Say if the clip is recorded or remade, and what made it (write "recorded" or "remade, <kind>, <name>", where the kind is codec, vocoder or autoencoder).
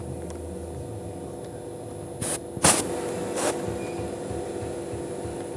recorded